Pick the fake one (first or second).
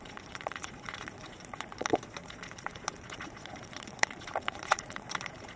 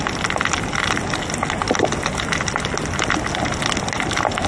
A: first